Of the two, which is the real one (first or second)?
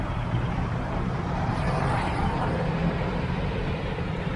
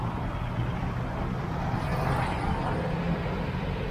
second